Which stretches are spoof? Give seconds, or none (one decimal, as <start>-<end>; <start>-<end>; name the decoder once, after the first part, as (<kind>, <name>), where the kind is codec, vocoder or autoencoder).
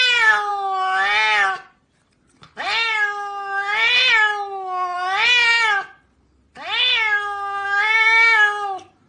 none